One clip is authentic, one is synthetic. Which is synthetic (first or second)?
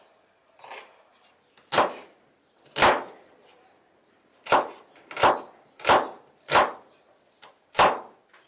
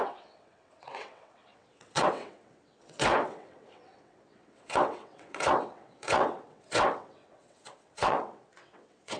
second